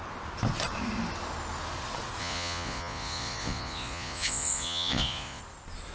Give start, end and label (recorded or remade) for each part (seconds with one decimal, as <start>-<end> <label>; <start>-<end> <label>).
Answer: 0.0-2.2 recorded; 2.2-5.4 remade; 5.4-5.9 recorded